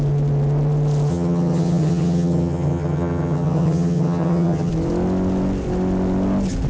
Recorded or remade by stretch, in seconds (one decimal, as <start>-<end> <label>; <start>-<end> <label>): 0.0-1.1 recorded; 1.1-4.7 remade; 4.7-6.7 recorded